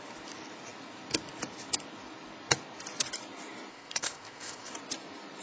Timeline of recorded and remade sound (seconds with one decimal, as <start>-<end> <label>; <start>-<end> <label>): 0.0-3.7 recorded; 3.7-4.7 remade; 4.7-5.4 recorded